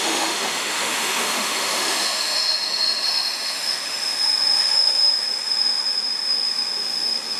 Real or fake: fake